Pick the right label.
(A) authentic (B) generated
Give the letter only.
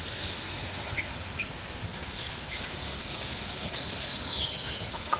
B